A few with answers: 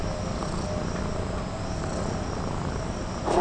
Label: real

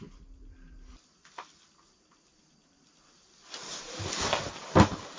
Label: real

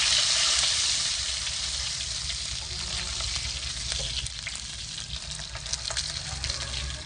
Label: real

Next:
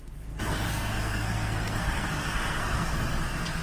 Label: fake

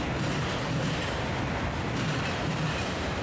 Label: fake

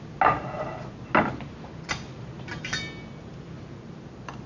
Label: real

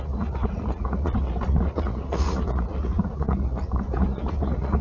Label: fake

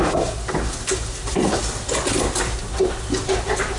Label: real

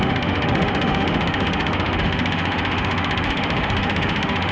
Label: fake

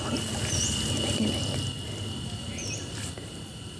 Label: real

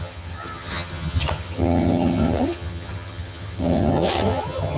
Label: fake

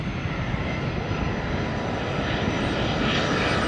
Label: real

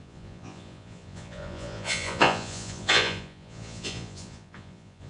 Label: fake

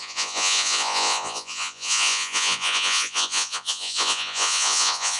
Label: fake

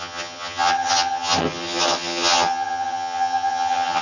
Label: fake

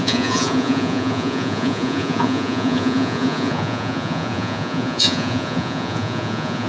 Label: fake